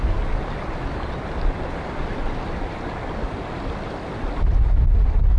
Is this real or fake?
real